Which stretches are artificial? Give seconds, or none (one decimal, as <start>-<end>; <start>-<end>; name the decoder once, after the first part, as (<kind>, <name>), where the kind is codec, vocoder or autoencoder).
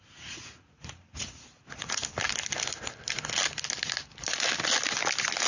0.0-2.0 (vocoder, Vocos)